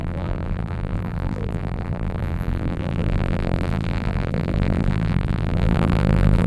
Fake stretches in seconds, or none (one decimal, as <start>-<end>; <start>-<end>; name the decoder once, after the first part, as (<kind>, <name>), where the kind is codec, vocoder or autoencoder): 0.0-6.5 (vocoder, BigVGAN v2)